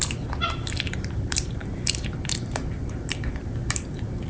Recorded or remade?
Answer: remade